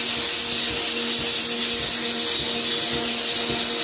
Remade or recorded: recorded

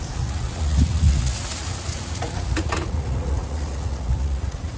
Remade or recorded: remade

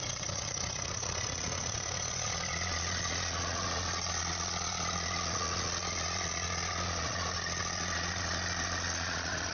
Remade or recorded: remade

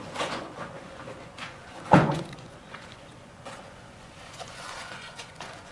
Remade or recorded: remade